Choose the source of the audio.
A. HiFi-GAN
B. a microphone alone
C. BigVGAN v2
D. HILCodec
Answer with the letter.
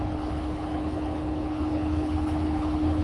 D